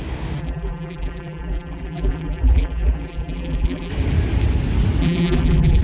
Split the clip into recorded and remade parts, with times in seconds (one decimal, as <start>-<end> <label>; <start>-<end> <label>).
0.0-0.4 recorded; 0.4-3.9 remade; 3.9-5.0 recorded; 5.0-5.8 remade